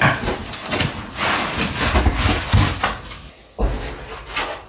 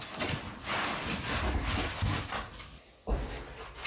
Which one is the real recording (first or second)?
first